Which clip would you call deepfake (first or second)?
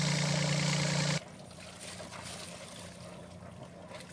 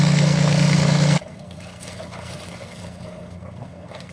second